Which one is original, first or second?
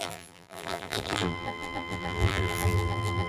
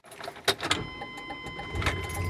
second